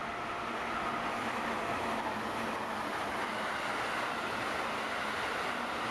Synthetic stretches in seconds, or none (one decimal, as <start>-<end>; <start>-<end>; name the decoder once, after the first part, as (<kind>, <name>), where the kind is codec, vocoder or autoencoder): none